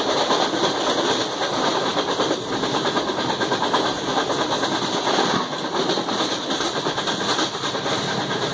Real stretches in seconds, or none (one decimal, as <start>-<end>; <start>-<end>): 0.0-1.9; 2.5-5.5; 7.7-8.5